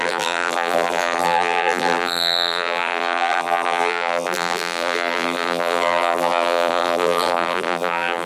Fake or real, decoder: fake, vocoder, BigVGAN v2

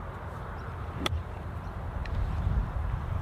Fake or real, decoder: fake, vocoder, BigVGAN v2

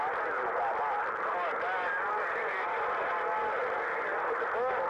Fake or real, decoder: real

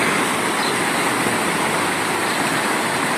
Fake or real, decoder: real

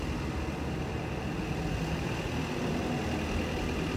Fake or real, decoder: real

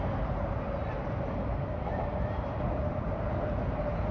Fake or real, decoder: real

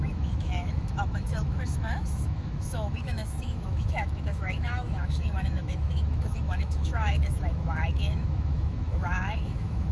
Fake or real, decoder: fake, autoencoder, DAC-VAE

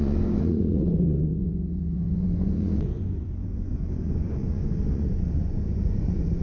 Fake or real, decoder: fake, vocoder, Vocos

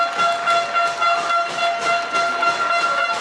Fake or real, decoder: real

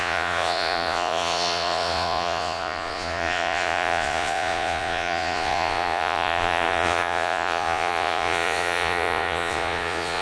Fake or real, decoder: fake, vocoder, Vocos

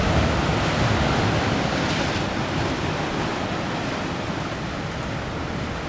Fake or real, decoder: real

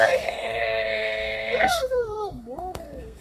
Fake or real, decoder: fake, codec, SNAC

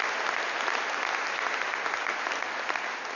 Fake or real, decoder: real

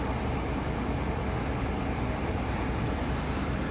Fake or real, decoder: real